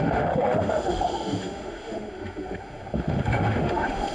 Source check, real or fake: fake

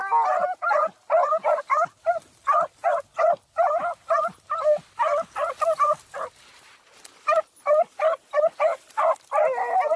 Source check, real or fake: real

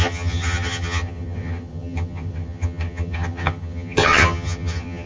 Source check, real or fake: fake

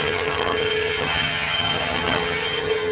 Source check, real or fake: fake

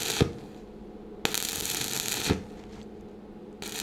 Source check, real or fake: real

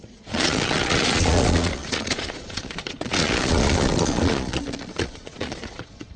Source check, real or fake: fake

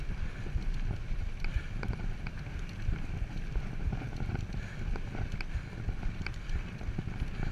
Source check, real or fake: real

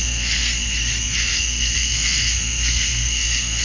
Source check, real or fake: fake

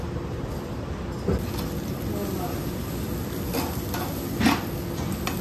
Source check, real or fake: real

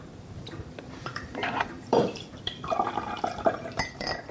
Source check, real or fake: fake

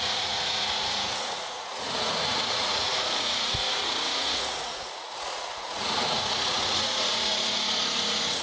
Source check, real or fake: fake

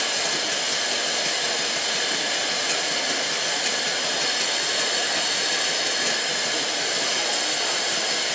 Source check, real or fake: real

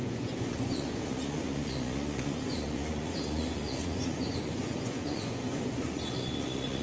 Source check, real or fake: fake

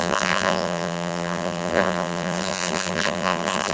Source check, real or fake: fake